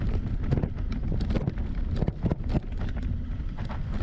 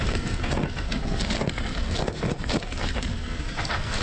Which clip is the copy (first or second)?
second